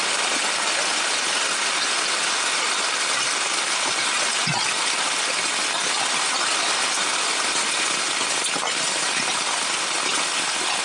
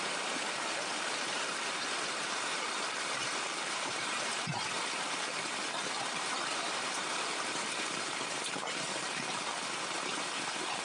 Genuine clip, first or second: first